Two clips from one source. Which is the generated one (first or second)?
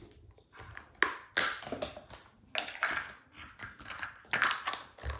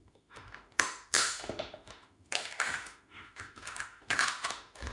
second